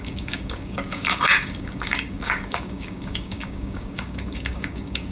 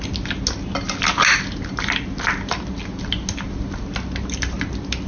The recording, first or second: second